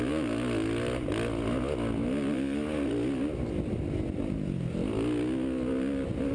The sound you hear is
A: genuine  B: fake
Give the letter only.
A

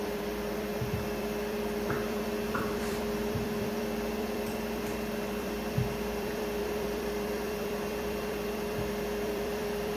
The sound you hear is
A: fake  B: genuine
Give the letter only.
A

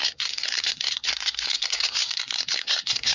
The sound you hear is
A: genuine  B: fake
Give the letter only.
B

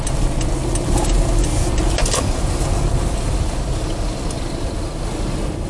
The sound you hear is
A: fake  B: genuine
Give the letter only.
B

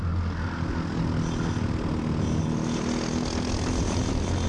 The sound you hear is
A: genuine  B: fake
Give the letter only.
A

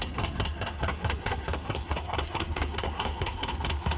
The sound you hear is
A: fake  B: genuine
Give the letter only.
A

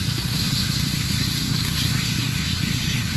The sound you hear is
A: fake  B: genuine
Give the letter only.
A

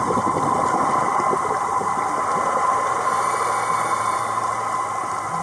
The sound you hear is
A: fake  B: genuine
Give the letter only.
B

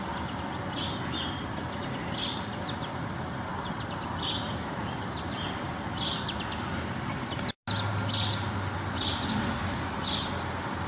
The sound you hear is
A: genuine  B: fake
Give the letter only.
A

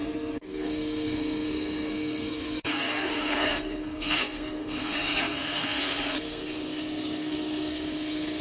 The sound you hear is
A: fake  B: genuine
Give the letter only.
A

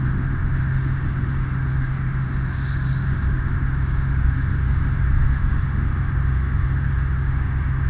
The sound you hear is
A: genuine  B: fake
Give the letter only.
B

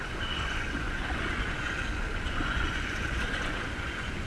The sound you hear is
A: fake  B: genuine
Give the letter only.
A